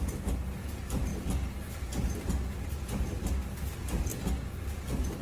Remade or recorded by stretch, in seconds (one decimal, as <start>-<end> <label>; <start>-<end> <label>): 0.0-1.1 remade; 1.1-2.6 recorded; 2.6-4.1 remade; 4.1-4.7 recorded; 4.7-5.2 remade

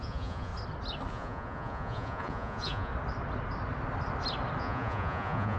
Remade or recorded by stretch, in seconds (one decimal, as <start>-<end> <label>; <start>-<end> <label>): 0.0-0.5 remade; 0.5-1.1 recorded; 1.1-2.9 remade; 2.9-4.6 recorded; 4.6-5.6 remade

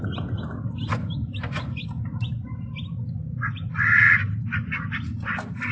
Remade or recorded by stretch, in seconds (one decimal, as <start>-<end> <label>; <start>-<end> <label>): 0.0-5.7 recorded

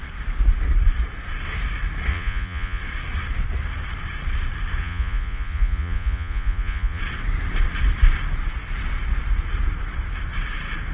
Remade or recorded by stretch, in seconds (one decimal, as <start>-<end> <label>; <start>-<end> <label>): 0.0-2.1 recorded; 2.1-2.8 remade; 2.8-4.8 recorded; 4.8-7.0 remade; 7.0-10.9 recorded

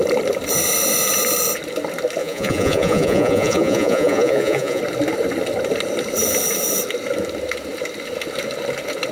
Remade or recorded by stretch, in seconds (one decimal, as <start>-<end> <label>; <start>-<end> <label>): 0.0-2.2 recorded; 2.2-4.8 remade; 4.8-9.1 recorded

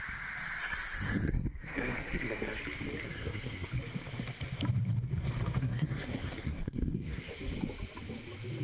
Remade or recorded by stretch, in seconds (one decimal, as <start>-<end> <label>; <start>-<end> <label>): 0.0-0.6 recorded; 0.6-2.6 remade; 2.6-3.0 recorded; 3.0-3.7 remade; 3.7-5.6 recorded; 5.6-7.3 remade; 7.3-8.6 recorded

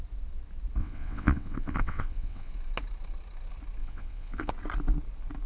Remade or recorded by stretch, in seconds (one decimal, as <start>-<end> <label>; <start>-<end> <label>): 0.0-0.8 recorded; 0.8-2.5 remade; 2.5-3.8 recorded; 3.8-4.5 remade; 4.5-5.5 recorded